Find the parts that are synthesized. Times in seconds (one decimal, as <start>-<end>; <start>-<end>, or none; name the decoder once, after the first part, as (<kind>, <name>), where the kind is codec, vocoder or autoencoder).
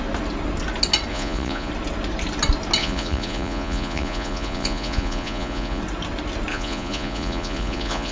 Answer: 1.1-1.7 (vocoder, Vocos); 2.8-5.8; 6.5-8.1